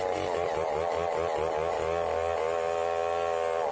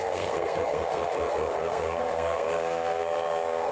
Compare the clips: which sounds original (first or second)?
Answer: first